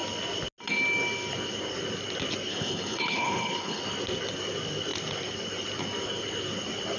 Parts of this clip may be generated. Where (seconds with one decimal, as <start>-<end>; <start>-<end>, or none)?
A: 2.5-3.8